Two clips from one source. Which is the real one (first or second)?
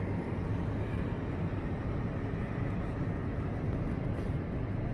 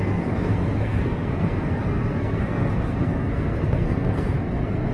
first